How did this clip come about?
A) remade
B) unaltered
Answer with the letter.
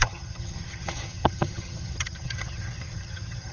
A